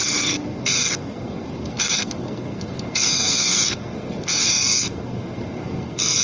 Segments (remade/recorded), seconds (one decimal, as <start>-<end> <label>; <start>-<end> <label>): 0.0-6.2 remade